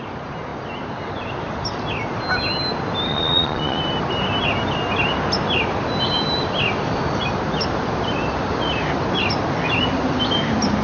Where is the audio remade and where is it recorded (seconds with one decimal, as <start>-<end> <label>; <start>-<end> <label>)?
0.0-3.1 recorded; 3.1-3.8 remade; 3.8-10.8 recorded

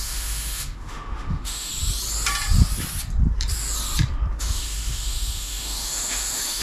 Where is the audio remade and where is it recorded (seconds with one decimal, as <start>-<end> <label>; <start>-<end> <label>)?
0.0-1.7 remade; 1.7-4.4 recorded; 4.4-6.6 remade

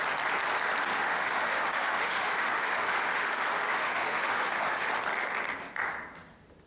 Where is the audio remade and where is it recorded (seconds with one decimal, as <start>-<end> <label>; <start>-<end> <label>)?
0.0-0.9 recorded; 0.9-4.9 remade; 4.9-6.7 recorded

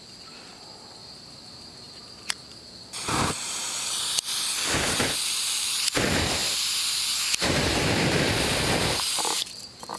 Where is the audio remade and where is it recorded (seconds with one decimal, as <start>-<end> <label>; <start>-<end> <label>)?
0.0-1.0 recorded; 1.0-4.1 remade; 4.1-9.1 recorded; 9.1-10.0 remade

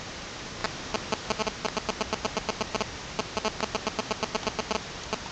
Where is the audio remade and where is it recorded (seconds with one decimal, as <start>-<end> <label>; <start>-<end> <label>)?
0.0-5.3 recorded